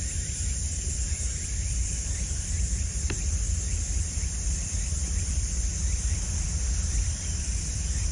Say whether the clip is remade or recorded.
remade